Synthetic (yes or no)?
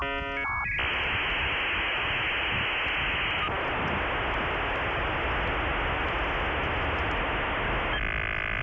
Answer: no